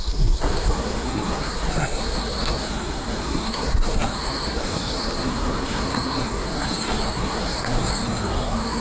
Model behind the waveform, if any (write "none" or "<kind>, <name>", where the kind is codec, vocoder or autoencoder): codec, SNAC